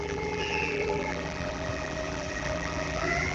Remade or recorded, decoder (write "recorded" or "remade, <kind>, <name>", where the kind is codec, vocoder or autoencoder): remade, vocoder, BigVGAN v2